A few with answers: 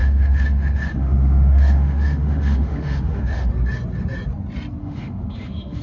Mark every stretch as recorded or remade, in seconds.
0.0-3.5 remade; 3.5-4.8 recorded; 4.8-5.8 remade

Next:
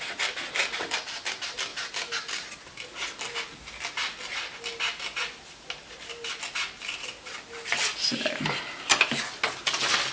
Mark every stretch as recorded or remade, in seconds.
0.0-10.1 recorded